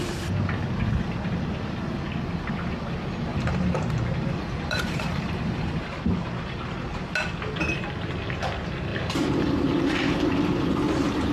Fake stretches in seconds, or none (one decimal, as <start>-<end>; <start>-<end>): 3.3-5.7; 6.2-7.1; 8.9-10.4